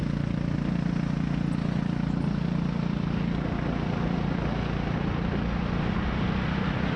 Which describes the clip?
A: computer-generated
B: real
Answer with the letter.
B